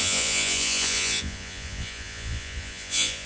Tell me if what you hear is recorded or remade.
remade